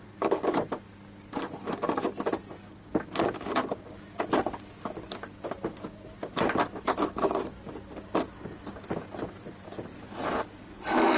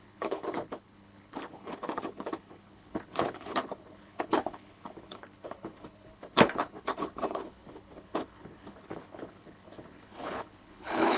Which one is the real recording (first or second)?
first